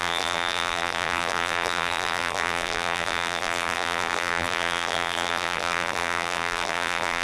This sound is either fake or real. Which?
fake